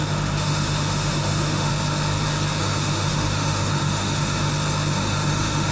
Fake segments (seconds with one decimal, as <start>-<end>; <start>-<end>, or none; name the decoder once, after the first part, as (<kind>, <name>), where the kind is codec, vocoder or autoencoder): 0.0-1.7 (autoencoder, DAC-VAE); 2.6-4.5; 4.9-5.7